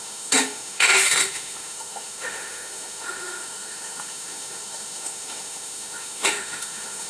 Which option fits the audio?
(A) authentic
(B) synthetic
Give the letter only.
B